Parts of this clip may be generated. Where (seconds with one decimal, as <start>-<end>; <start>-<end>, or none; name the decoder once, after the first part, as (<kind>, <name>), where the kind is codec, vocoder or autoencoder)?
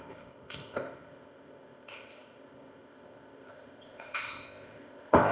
0.0-5.3 (codec, ZipCodec)